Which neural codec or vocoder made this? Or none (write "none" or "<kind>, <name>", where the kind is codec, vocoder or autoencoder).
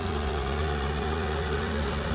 vocoder, Vocos